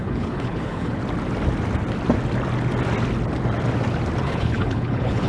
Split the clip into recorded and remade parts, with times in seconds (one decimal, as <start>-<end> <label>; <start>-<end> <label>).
0.0-1.0 remade; 1.0-4.2 recorded; 4.2-5.3 remade